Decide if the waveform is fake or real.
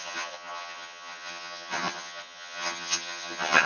fake